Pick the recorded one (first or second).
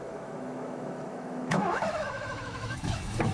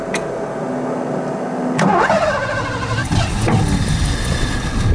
second